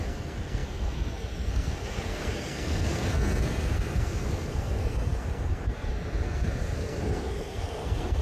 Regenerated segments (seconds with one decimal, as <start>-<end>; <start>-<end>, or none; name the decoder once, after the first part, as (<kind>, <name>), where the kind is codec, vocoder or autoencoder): 0.0-8.2 (codec, SNAC)